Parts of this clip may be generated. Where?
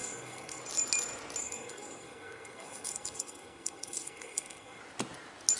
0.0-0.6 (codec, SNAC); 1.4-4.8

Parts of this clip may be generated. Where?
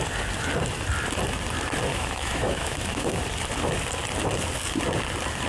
1.9-3.2 (autoencoder, DAC-VAE)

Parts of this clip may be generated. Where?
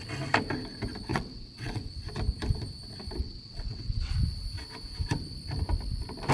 1.1-1.9 (vocoder, WaveNeXt); 3.2-4.1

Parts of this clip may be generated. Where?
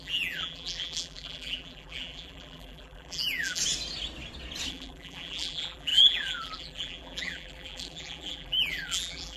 0.0-3.6 (vocoder, BigVGAN v2); 4.7-9.4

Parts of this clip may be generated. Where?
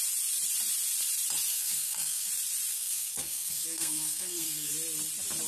1.5-2.3 (codec, SNAC); 2.7-4.7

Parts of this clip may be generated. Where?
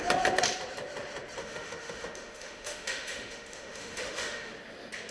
1.4-4.5 (autoencoder, DAC-VAE)